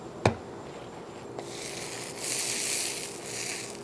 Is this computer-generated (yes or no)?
no